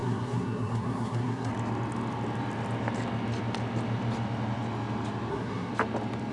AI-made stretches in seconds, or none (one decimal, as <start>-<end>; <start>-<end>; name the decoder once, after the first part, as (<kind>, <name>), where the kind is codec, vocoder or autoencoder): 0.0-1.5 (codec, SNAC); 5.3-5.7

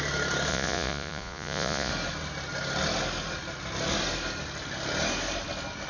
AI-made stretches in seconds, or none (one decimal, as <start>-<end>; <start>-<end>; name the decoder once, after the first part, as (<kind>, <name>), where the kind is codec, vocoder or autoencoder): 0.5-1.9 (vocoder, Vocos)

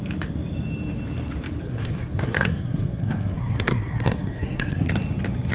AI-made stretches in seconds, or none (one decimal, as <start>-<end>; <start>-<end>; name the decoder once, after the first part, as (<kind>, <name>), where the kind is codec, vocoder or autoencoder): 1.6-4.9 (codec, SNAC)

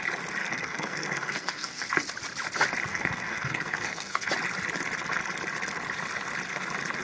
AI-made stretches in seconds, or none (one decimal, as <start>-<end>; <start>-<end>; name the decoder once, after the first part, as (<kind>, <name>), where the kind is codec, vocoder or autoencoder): 0.4-1.9 (codec, SNAC); 2.9-4.3